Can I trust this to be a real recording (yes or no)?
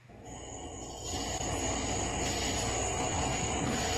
yes